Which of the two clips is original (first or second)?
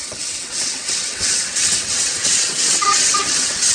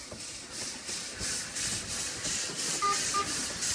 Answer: second